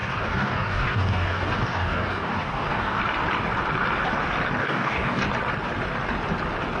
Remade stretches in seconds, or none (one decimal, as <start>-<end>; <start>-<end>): 0.0-3.0; 4.6-5.2